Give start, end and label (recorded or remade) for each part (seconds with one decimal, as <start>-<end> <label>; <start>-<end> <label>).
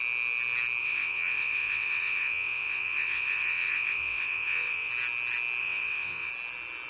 0.0-0.8 recorded; 0.8-4.9 remade; 4.9-5.6 recorded; 5.6-6.3 remade; 6.3-6.9 recorded